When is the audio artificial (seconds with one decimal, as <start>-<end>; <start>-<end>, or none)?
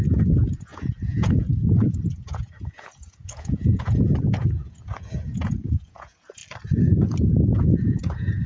0.0-6.4; 7.5-8.5